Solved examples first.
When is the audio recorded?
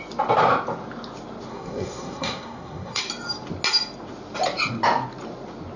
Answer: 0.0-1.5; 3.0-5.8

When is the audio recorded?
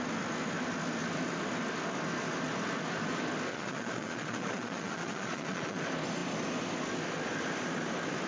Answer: 0.0-3.5; 5.8-8.3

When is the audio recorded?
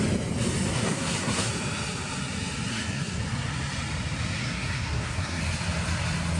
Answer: 0.0-0.7; 1.5-2.7; 3.2-4.4; 5.4-6.4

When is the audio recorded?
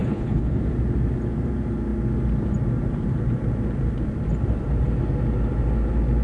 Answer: 0.6-6.2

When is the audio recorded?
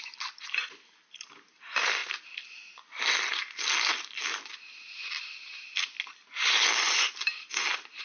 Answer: 0.0-8.0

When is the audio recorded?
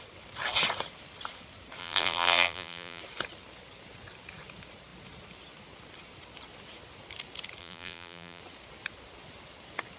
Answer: 0.0-1.8; 3.0-7.6; 8.4-10.0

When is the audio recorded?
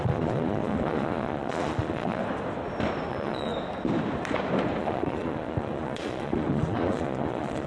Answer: 2.2-3.1; 3.5-4.8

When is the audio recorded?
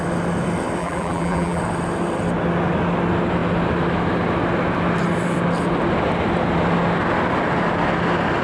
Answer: 0.0-0.8; 1.6-8.4